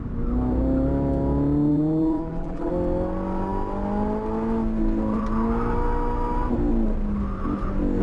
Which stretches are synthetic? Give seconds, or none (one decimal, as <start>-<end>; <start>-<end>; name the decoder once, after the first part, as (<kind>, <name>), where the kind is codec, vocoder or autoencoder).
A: 1.7-2.7 (vocoder, BigVGAN v2)